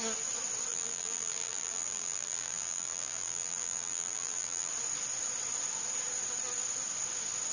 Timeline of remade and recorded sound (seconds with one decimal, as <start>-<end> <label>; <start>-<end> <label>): 0.0-0.7 recorded; 0.7-4.7 remade; 4.7-7.5 recorded